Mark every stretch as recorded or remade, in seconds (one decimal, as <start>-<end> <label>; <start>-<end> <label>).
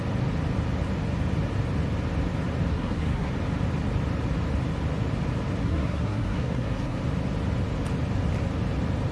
0.0-2.7 recorded; 2.7-3.3 remade; 3.3-5.6 recorded; 5.6-7.0 remade; 7.0-9.1 recorded